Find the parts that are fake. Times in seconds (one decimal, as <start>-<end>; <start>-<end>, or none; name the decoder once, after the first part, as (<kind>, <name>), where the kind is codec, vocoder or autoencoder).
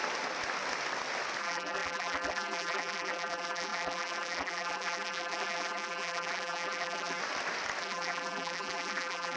1.4-7.2 (vocoder, BigVGAN v2); 7.8-9.4